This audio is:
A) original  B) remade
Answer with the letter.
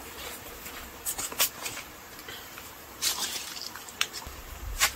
B